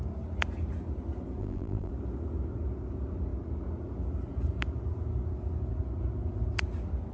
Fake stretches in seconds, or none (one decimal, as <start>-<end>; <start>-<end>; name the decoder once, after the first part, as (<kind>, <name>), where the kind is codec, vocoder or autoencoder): 1.4-1.9 (vocoder, BigVGAN v2)